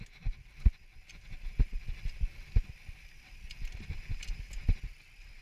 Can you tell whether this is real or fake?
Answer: real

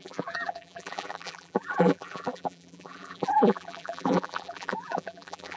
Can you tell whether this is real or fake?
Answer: fake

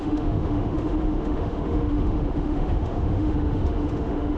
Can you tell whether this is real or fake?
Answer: fake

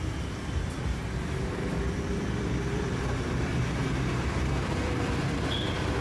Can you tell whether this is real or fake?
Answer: fake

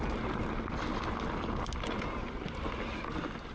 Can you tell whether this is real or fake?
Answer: real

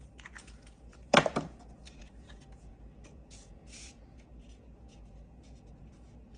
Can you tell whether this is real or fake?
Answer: fake